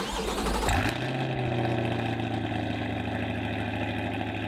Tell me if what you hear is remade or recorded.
recorded